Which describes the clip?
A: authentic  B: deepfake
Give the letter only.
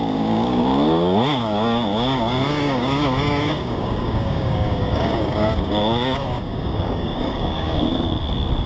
B